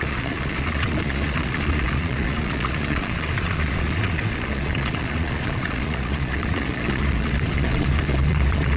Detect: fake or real fake